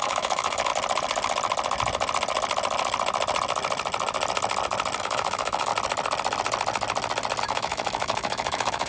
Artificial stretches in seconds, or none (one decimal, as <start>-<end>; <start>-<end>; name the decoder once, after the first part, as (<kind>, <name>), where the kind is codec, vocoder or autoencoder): 0.0-0.7 (autoencoder, DAC-VAE); 5.0-5.7; 7.4-8.9